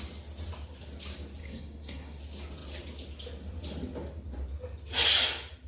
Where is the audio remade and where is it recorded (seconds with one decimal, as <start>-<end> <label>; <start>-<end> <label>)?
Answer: 0.0-1.4 recorded; 1.4-2.2 remade; 2.2-5.7 recorded